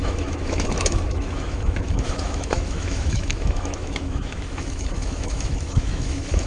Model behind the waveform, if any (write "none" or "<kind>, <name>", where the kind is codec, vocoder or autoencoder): autoencoder, DAC-VAE